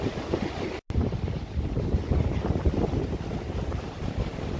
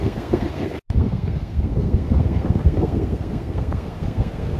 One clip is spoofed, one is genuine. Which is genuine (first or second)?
first